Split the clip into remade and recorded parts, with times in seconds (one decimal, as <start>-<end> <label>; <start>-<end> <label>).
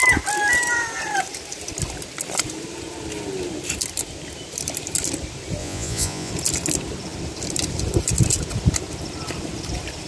0.0-5.6 recorded; 5.6-6.3 remade; 6.3-10.1 recorded